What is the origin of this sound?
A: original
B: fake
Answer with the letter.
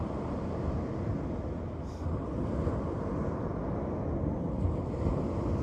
A